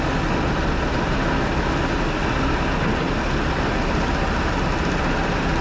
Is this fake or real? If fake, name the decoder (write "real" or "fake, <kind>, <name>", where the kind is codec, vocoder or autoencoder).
real